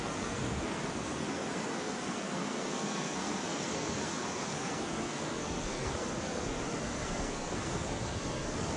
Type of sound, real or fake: fake